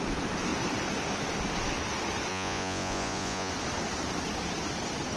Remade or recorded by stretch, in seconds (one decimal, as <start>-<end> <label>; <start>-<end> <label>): 0.0-2.3 recorded; 2.3-3.5 remade; 3.5-5.2 recorded